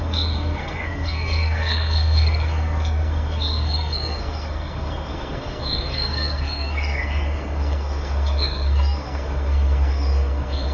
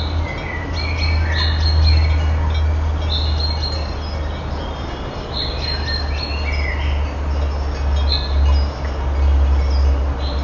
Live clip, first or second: second